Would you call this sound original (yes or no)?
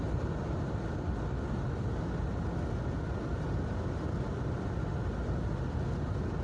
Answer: yes